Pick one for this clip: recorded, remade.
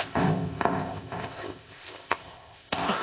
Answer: remade